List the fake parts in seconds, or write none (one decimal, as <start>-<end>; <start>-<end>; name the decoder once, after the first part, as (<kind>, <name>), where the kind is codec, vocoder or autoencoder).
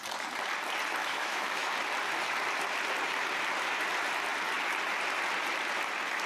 1.0-1.7 (autoencoder, DAC-VAE)